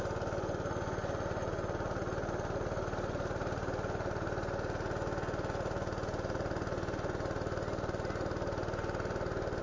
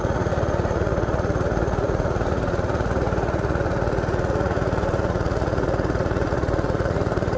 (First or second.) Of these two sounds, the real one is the first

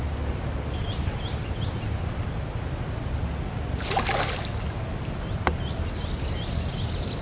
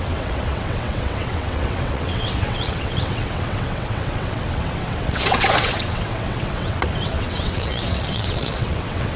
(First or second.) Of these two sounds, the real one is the first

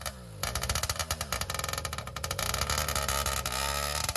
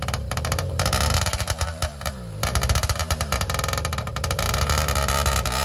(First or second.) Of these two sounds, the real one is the first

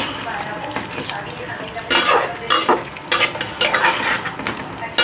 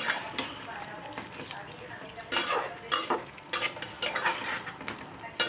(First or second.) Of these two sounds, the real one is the first